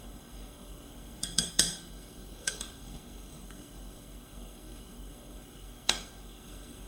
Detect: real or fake fake